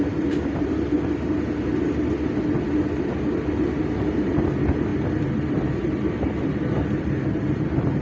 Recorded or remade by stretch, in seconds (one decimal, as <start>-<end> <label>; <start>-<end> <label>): 0.0-8.0 recorded